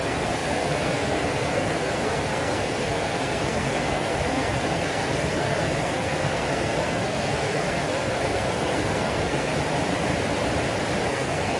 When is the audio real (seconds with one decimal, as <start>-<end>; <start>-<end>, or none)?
9.5-11.1

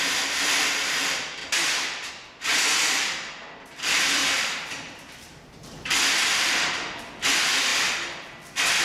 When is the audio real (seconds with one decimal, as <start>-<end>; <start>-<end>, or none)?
4.2-4.7; 7.7-8.8

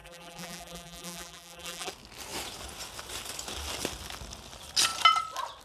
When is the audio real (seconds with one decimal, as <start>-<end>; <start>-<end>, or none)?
1.9-5.6

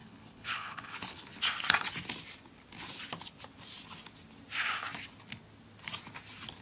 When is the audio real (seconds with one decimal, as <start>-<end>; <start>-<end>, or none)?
1.4-6.6

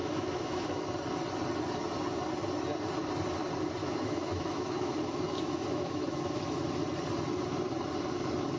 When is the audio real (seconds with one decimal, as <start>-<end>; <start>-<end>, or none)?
0.7-3.8; 6.4-8.6

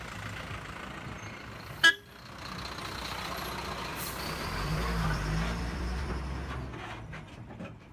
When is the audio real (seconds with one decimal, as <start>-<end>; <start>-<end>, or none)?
0.0-3.9; 6.1-7.9